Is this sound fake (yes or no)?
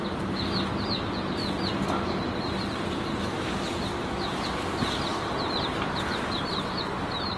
no